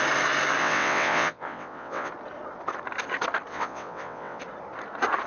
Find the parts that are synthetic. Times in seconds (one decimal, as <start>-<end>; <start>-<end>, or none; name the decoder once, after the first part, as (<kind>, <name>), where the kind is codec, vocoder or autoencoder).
0.6-2.1 (vocoder, WaveNeXt); 3.5-4.4